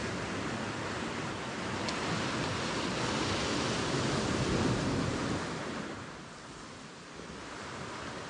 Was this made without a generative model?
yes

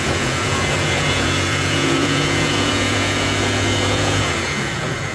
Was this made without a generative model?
no